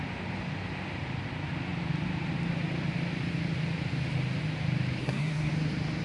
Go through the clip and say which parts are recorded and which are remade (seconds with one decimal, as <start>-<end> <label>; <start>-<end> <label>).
0.0-5.0 recorded; 5.0-5.5 remade; 5.5-6.0 recorded